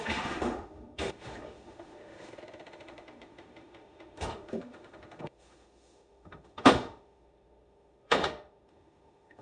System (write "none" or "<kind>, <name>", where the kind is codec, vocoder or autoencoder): autoencoder, DAC-VAE